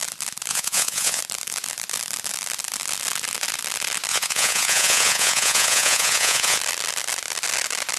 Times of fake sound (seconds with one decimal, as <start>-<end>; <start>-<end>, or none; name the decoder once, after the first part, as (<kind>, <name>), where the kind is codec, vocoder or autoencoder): 0.5-1.2 (vocoder, Vocos); 4.1-6.6